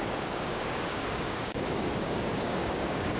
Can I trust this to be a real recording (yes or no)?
no